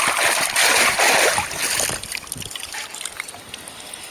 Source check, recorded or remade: recorded